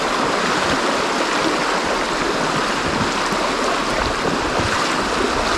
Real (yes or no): yes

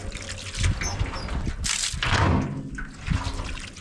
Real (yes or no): yes